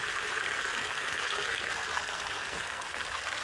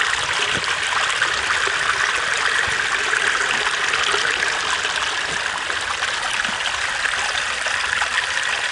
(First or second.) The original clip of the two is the second